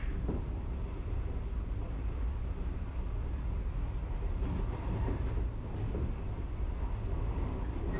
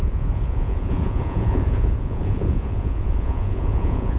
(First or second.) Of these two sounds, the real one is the first